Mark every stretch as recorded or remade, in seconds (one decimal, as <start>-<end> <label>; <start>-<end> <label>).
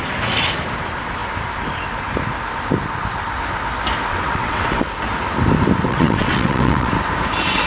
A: 0.0-4.1 recorded; 4.1-4.8 remade; 4.8-5.9 recorded; 5.9-6.9 remade; 6.9-7.7 recorded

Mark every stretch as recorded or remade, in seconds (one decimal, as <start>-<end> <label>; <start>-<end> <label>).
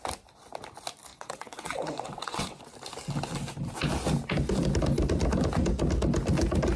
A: 0.0-1.1 recorded; 1.1-2.6 remade; 2.6-6.8 recorded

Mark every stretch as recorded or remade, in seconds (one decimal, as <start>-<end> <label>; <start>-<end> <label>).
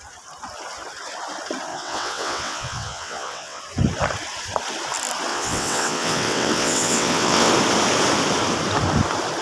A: 0.0-1.7 recorded; 1.7-3.6 remade; 3.6-5.3 recorded; 5.3-7.5 remade; 7.5-9.4 recorded